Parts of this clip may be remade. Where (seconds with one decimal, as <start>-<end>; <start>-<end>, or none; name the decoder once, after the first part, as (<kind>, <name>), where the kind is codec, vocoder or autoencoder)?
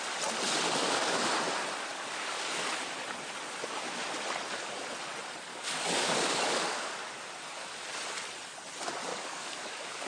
0.8-1.3 (codec, DAC); 1.9-2.7; 5.5-7.1; 9.1-10.1